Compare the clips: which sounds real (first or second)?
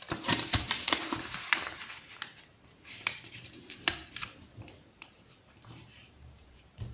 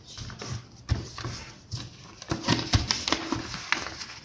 second